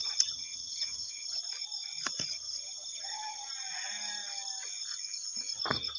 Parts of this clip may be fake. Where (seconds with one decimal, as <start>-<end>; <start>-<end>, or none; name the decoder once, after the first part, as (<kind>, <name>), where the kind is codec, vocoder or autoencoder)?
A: 0.0-1.4 (vocoder, HiFi-GAN); 2.3-3.5